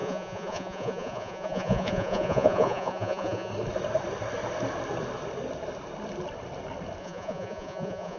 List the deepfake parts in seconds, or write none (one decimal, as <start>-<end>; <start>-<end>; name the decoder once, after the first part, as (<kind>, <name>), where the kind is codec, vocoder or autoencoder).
0.0-3.5 (vocoder, Vocos); 7.0-8.2